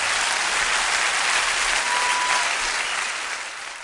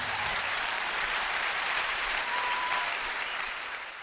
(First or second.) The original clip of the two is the first